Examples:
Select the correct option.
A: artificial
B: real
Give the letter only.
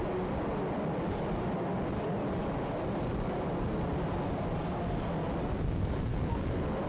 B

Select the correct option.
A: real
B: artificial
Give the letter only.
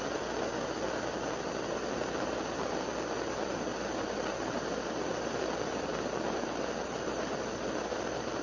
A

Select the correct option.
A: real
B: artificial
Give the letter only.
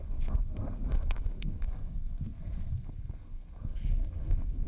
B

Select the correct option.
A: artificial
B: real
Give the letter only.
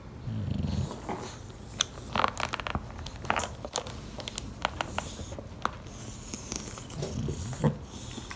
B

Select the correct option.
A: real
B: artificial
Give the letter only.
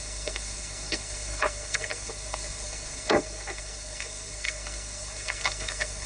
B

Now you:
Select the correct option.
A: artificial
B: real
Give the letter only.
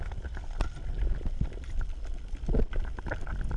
B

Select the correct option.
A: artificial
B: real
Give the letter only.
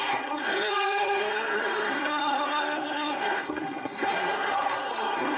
A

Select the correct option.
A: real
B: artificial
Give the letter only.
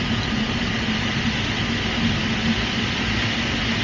A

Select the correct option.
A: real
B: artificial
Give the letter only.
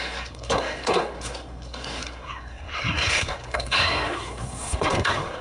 B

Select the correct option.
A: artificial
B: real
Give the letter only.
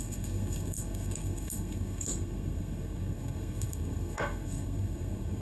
A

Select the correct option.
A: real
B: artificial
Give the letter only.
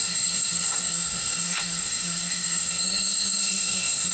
B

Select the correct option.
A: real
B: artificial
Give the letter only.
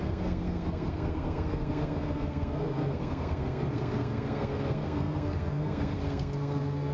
B